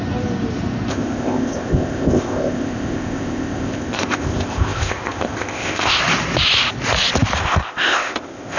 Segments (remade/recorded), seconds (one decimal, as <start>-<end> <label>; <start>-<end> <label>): 0.0-0.9 recorded; 0.9-6.0 remade; 6.0-7.4 recorded; 7.4-8.6 remade